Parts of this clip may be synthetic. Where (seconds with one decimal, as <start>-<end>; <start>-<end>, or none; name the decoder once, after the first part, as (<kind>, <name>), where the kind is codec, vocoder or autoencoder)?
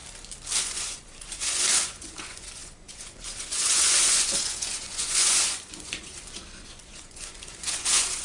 0.6-8.2 (vocoder, Vocos)